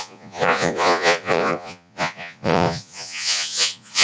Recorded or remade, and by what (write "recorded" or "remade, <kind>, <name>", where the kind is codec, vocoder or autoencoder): remade, vocoder, Vocos